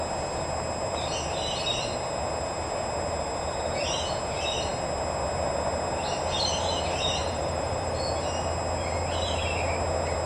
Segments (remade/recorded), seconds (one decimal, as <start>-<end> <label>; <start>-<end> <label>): 0.0-7.2 recorded; 7.2-8.0 remade; 8.0-10.3 recorded